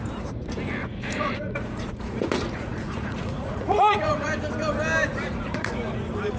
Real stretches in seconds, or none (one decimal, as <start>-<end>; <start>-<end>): 0.0-0.8; 4.3-5.1; 5.7-6.4